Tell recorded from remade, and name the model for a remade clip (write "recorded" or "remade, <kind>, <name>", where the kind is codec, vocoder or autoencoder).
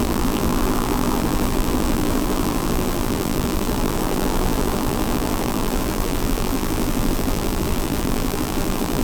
remade, vocoder, BigVGAN v2